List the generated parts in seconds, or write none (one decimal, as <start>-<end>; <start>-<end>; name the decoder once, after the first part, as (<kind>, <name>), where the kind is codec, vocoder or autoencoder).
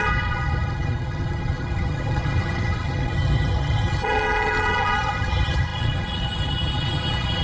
0.0-7.4 (vocoder, HiFi-GAN)